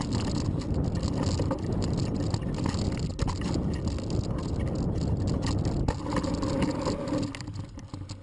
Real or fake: real